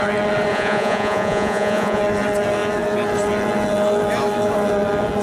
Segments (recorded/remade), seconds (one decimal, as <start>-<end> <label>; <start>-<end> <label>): 0.0-0.5 recorded; 0.5-2.0 remade; 2.0-5.2 recorded